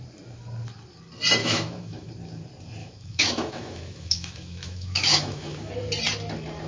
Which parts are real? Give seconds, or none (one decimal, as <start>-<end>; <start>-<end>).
0.0-1.4; 2.1-2.8; 5.7-6.7